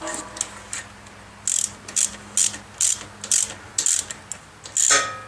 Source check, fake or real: real